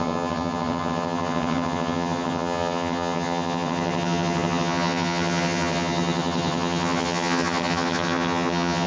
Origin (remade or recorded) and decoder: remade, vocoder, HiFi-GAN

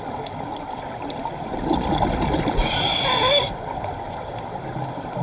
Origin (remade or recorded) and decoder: recorded